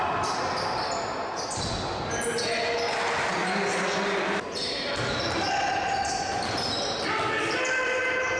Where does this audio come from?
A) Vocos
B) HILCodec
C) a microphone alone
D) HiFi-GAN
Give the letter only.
C